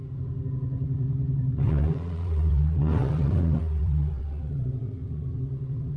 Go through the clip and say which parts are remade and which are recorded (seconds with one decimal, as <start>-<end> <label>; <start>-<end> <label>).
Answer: 0.0-0.5 recorded; 0.5-6.0 remade